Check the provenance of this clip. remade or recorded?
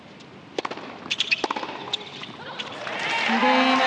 recorded